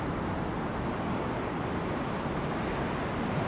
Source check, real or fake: real